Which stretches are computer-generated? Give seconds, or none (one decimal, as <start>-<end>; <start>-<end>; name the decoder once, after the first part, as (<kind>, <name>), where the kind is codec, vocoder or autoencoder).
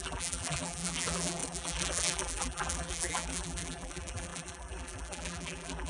0.0-5.9 (vocoder, BigVGAN v2)